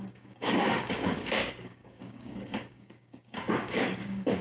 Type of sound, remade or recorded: remade